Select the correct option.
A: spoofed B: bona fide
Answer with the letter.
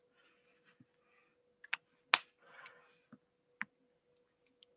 B